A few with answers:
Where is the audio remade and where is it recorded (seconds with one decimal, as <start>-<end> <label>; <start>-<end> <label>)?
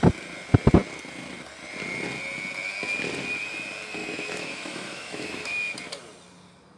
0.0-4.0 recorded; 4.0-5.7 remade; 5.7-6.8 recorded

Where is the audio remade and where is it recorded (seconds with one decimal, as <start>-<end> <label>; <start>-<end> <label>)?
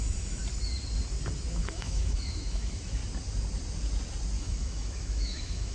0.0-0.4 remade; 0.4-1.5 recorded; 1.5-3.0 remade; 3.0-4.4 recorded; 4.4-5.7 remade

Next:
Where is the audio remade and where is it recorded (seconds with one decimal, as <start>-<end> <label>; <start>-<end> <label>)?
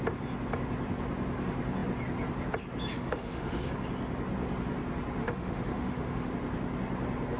0.0-2.9 recorded; 2.9-3.7 remade; 3.7-5.2 recorded; 5.2-6.3 remade; 6.3-7.4 recorded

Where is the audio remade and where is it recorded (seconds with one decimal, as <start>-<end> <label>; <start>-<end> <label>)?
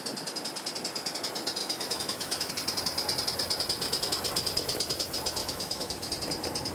0.0-1.6 recorded; 1.6-2.5 remade; 2.5-5.4 recorded; 5.4-6.1 remade; 6.1-6.7 recorded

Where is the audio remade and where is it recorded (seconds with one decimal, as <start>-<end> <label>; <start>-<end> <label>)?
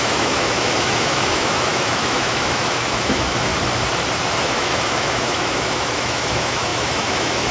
0.0-3.5 remade; 3.5-4.4 recorded; 4.4-7.5 remade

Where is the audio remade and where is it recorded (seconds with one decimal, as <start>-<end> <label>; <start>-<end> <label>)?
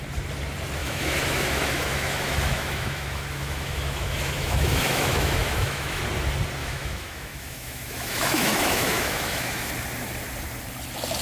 0.0-0.8 recorded; 0.8-6.0 remade; 6.0-6.6 recorded; 6.6-9.7 remade; 9.7-11.2 recorded